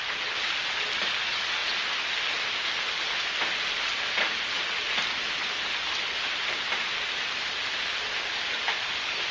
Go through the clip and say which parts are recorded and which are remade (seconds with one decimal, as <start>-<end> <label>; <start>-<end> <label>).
0.0-9.3 recorded